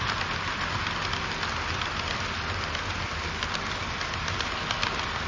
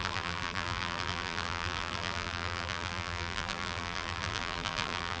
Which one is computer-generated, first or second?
second